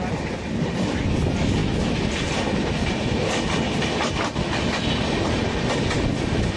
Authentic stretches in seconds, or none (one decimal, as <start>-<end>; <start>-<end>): 0.0-6.6